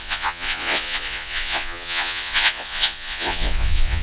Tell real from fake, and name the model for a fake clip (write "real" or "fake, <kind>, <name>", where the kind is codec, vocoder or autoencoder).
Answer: fake, vocoder, Vocos